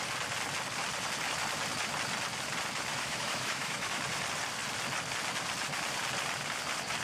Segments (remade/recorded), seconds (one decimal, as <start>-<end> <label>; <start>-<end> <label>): 0.0-2.9 recorded; 2.9-4.0 remade; 4.0-7.0 recorded